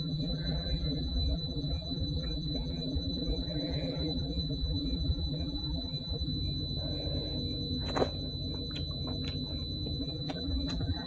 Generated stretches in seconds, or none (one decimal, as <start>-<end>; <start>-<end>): 0.0-6.3; 10.0-11.1